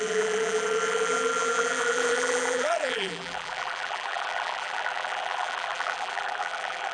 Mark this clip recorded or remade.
remade